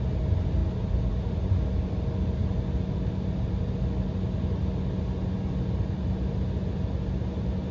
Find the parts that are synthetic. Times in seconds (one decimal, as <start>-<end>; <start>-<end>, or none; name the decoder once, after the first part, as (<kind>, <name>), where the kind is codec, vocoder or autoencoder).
none